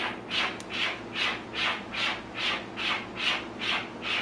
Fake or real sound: real